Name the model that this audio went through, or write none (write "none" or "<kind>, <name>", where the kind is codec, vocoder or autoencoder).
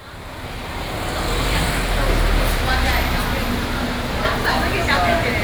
none